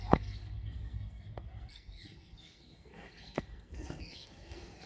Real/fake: fake